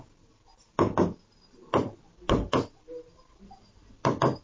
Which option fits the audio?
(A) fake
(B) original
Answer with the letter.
B